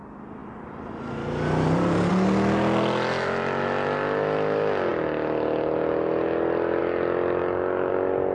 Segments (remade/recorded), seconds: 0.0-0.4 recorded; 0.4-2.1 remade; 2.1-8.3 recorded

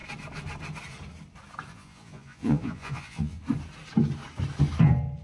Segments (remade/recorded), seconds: 0.0-1.7 recorded; 1.7-3.4 remade; 3.4-5.2 recorded

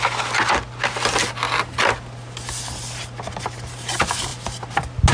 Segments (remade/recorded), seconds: 0.0-5.1 recorded